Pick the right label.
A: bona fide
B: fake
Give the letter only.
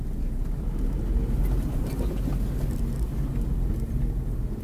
A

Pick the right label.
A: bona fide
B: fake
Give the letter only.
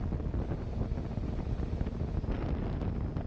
A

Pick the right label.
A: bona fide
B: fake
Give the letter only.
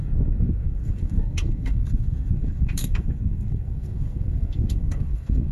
B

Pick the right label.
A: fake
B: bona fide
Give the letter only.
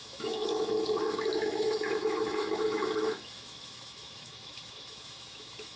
A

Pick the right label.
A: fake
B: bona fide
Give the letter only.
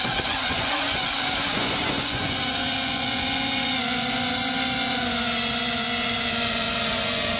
A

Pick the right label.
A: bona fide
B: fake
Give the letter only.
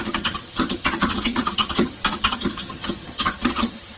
B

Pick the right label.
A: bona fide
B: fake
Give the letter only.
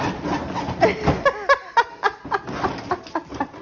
A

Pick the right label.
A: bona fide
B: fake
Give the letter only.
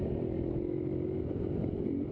A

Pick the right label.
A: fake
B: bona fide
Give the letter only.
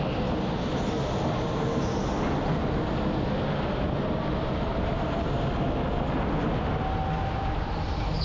B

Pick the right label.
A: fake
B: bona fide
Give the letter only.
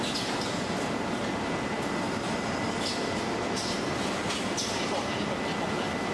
B